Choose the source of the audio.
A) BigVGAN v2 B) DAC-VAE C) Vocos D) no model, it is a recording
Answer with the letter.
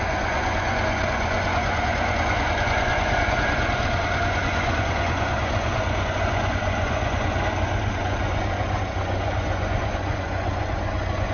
C